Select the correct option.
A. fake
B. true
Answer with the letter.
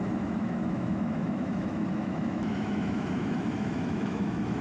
A